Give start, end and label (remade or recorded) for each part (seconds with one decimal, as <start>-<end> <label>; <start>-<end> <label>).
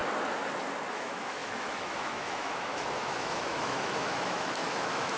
0.0-0.9 recorded; 0.9-5.2 remade